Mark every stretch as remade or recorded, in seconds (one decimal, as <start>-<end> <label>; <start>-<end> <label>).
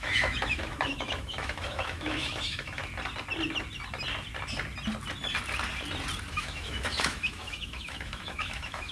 0.0-2.8 remade; 2.8-6.3 recorded; 6.3-8.9 remade